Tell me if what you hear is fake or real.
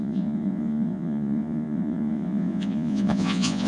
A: fake